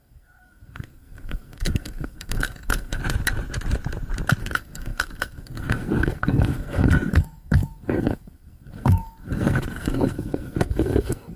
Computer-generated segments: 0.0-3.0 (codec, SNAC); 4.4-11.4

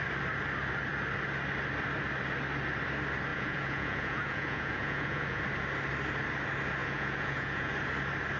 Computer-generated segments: 3.3-5.4 (vocoder, Vocos); 6.8-7.7

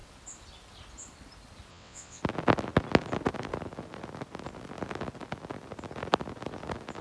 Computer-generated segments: 1.7-2.2 (vocoder, WaveNeXt)

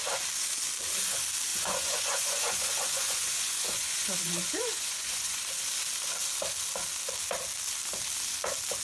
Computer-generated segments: 1.5-5.4 (vocoder, Vocos)